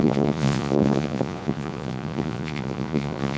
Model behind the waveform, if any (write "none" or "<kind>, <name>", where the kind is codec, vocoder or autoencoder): vocoder, Vocos